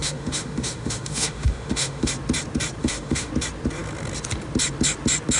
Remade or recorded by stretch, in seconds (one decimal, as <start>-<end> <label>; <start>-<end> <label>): 0.0-2.1 remade; 2.1-2.8 recorded; 2.8-3.3 remade; 3.3-5.4 recorded

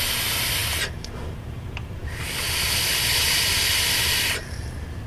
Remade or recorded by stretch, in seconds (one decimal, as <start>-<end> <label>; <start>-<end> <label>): 0.0-5.1 recorded

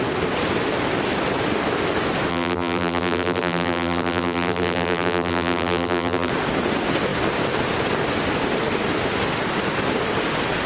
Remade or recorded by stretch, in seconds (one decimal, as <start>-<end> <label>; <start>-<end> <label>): 0.0-2.3 recorded; 2.3-6.3 remade; 6.3-10.7 recorded